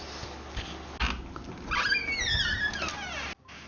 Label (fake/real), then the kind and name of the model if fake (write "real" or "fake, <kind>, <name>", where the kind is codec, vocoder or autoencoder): real